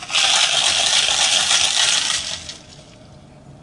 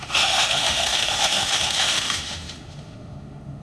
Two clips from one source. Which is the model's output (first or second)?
second